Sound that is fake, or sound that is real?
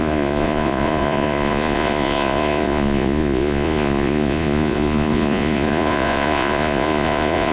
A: fake